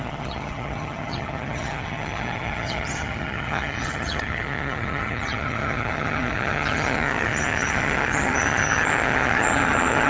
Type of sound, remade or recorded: remade